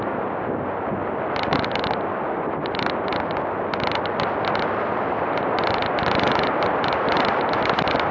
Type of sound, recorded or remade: recorded